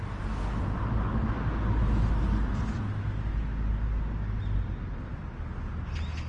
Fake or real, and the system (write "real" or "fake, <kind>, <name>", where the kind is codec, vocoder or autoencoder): real